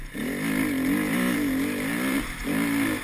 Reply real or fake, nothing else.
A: real